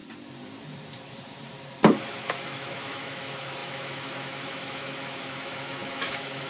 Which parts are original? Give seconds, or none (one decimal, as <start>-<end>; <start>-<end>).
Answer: 0.0-2.1